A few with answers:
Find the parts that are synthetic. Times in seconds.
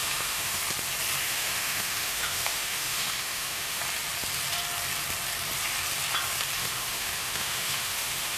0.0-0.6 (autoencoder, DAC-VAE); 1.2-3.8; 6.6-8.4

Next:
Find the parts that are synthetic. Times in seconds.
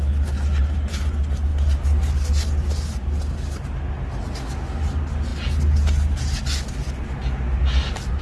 none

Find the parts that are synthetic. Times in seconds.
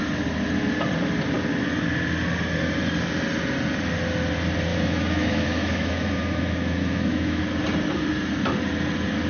4.7-7.4 (autoencoder, DAC-VAE)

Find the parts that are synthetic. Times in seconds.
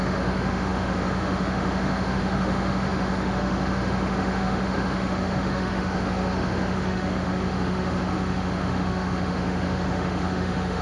0.0-10.8 (autoencoder, DAC-VAE)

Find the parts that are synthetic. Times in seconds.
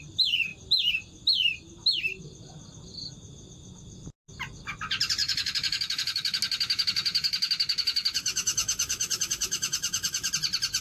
5.2-10.3 (autoencoder, DAC-VAE)